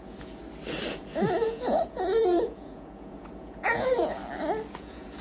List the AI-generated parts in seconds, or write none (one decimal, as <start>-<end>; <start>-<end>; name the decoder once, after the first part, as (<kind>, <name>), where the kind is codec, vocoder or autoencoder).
0.0-0.4 (vocoder, Vocos); 0.9-4.2; 4.7-5.2

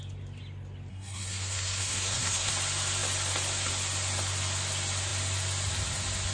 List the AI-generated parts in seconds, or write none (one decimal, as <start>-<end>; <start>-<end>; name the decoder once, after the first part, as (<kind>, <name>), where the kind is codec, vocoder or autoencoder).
0.9-2.5 (codec, SNAC)

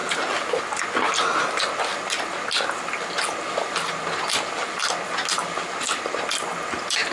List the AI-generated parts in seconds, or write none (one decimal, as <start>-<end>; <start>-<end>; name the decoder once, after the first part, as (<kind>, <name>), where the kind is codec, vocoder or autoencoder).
none

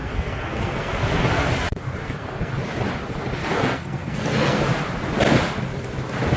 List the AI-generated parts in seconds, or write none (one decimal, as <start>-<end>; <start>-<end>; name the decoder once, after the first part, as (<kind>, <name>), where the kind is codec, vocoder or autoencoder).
0.0-1.1 (codec, SNAC); 2.0-2.5; 3.4-4.6

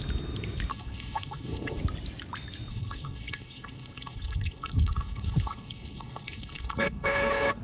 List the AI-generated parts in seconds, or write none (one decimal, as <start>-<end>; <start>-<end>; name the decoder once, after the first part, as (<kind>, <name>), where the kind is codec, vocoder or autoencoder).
0.7-1.8 (codec, HILCodec); 2.7-7.6

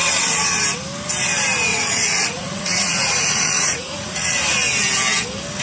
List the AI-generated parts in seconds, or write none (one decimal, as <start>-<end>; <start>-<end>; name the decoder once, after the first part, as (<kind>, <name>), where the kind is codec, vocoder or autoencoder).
0.0-0.6 (vocoder, Vocos); 1.7-4.4